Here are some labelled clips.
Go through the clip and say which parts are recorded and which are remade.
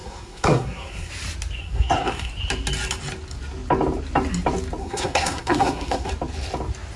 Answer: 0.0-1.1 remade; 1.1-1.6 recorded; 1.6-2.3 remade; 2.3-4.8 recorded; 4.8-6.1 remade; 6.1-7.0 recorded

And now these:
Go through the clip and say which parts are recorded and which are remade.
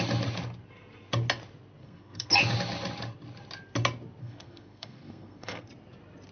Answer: 0.0-1.8 recorded; 1.8-2.3 remade; 2.3-4.2 recorded; 4.2-5.7 remade; 5.7-6.3 recorded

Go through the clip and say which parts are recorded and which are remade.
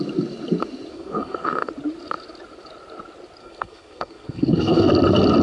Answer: 0.0-0.9 recorded; 0.9-1.7 remade; 1.7-3.4 recorded; 3.4-4.9 remade; 4.9-5.4 recorded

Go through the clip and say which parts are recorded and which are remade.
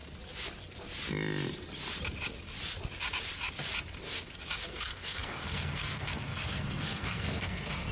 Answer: 0.0-4.6 recorded; 4.6-7.9 remade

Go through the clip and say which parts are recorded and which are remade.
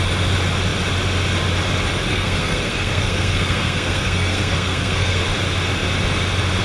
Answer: 0.0-2.1 recorded; 2.1-5.2 remade; 5.2-6.6 recorded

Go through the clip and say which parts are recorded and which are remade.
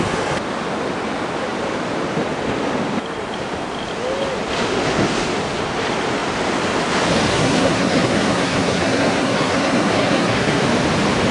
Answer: 0.0-7.3 recorded; 7.3-10.6 remade; 10.6-11.3 recorded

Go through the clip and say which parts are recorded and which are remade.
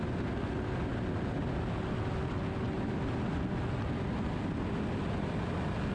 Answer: 0.0-5.9 recorded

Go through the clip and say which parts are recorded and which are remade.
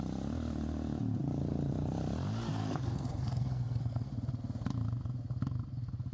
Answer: 0.0-2.6 recorded; 2.6-4.1 remade; 4.1-6.1 recorded